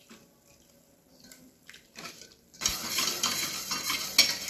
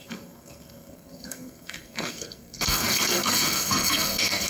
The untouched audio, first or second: first